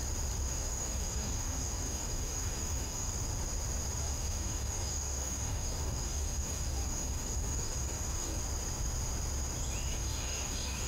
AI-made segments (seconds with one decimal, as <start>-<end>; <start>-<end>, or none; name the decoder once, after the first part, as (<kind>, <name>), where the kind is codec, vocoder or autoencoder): 0.5-3.1 (codec, DAC); 4.0-8.4; 9.9-10.9